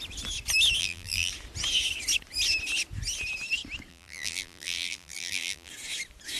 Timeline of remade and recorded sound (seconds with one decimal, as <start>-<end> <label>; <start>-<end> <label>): 0.0-0.8 recorded; 0.8-1.3 remade; 1.3-3.9 recorded; 3.9-5.7 remade; 5.7-6.4 recorded